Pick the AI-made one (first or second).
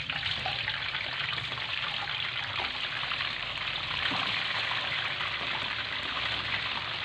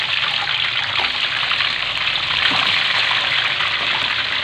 first